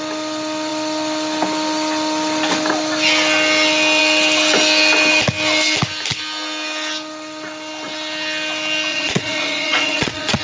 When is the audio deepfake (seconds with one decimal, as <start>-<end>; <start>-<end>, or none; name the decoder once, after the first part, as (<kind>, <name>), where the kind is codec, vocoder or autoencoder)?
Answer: 8.9-10.4 (vocoder, Vocos)